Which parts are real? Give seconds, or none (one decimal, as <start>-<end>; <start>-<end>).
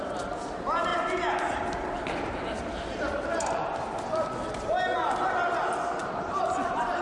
0.0-6.0